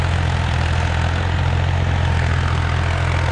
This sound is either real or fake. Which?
real